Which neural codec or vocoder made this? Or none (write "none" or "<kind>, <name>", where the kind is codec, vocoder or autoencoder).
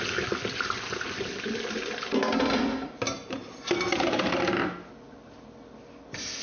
none